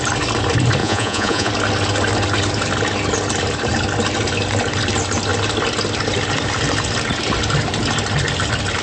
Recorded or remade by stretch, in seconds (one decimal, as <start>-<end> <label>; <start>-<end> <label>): 0.0-0.8 recorded; 0.8-1.5 remade; 1.5-8.8 recorded